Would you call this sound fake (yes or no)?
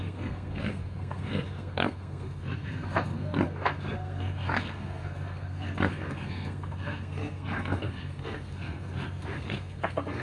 yes